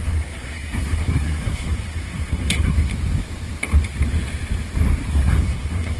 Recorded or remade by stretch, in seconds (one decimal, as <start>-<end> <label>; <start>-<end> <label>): 0.0-2.9 remade; 2.9-5.1 recorded; 5.1-6.0 remade